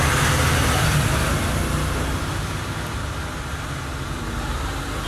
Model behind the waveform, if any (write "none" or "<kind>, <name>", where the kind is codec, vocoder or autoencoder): none